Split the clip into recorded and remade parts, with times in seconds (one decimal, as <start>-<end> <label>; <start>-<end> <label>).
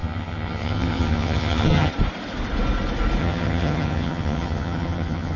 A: 0.0-1.9 remade; 1.9-3.2 recorded; 3.2-5.4 remade